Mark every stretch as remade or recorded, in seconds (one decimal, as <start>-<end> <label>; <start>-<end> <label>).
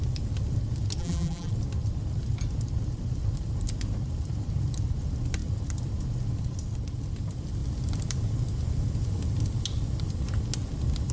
0.0-1.0 recorded; 1.0-1.5 remade; 1.5-11.1 recorded